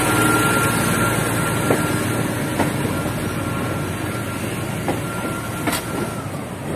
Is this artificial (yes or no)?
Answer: no